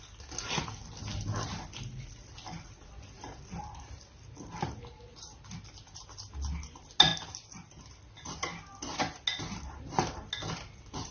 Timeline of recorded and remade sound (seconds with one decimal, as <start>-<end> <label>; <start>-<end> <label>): 0.0-11.1 recorded